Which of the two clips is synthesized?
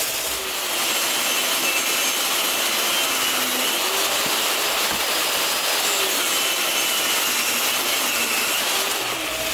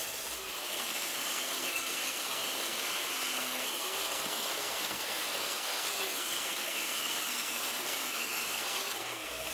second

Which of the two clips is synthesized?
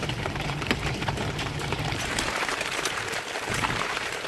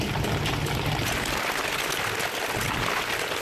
first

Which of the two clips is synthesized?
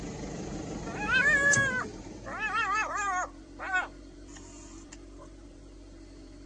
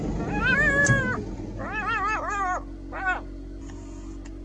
first